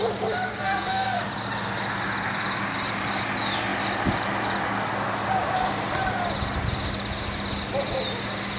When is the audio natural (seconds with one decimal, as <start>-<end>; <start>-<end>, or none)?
0.0-0.5; 1.2-8.6

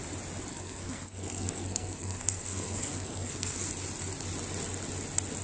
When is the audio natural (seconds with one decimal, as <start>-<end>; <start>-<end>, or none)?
0.0-0.5; 3.7-5.4